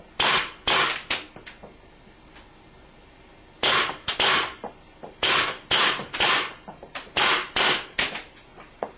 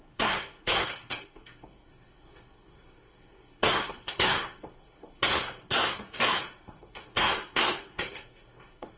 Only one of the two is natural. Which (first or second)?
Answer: first